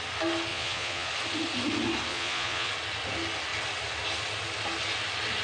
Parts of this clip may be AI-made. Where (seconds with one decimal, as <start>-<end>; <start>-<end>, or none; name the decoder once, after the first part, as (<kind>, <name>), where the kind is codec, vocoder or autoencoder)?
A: 0.5-1.1 (vocoder, Vocos); 2.1-2.7